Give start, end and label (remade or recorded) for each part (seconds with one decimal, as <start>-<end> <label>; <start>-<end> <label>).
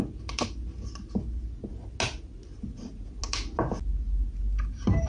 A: 0.0-5.1 recorded